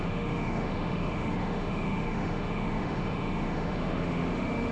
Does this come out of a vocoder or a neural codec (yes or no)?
yes